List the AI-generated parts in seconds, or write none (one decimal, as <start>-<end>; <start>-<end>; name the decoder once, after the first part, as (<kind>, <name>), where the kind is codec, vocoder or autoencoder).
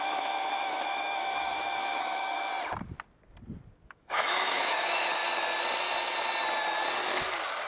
0.0-2.5 (autoencoder, DAC-VAE); 3.9-5.2